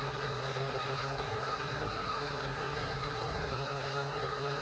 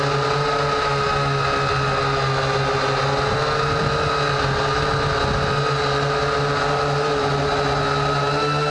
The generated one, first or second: first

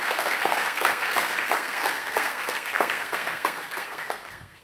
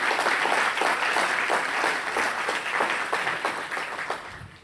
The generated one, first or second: first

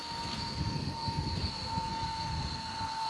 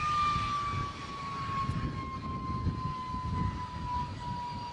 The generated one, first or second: first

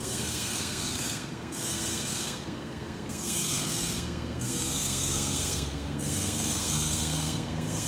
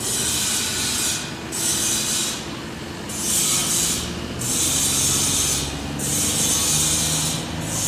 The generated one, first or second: first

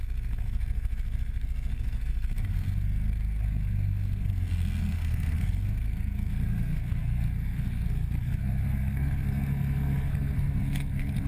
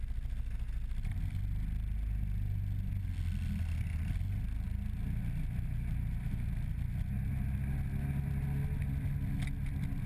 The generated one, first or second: first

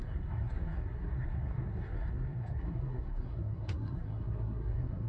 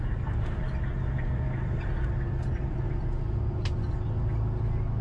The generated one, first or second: first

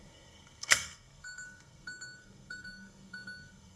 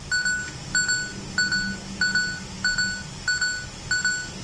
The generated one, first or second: first